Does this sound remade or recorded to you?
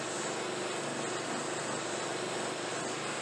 recorded